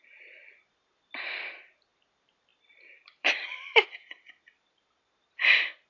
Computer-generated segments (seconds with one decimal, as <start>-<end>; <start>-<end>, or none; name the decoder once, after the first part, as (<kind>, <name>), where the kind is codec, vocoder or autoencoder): 2.5-5.0 (vocoder, BigVGAN v2)